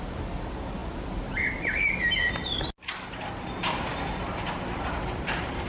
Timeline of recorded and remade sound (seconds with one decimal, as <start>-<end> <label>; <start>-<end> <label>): 0.0-5.7 recorded